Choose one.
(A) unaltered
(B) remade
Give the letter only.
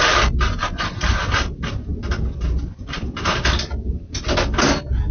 A